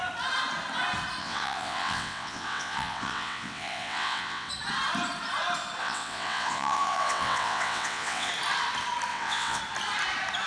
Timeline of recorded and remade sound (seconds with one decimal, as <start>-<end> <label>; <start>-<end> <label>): 0.0-1.2 recorded; 1.2-4.5 remade; 4.5-5.8 recorded; 5.8-8.3 remade; 8.3-9.1 recorded; 9.1-9.6 remade; 9.6-10.5 recorded